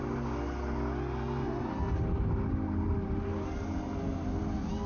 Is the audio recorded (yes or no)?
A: yes